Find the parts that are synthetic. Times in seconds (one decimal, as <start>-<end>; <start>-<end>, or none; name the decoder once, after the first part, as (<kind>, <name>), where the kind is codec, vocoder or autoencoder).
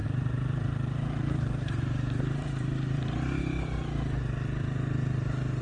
0.0-3.4 (vocoder, BigVGAN v2)